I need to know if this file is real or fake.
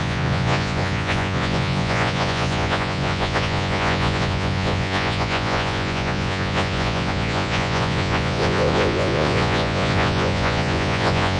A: fake